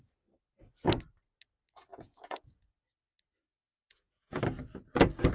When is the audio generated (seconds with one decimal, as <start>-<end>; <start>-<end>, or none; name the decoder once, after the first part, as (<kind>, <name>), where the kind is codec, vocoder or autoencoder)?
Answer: 1.9-2.7 (vocoder, Vocos); 3.6-4.4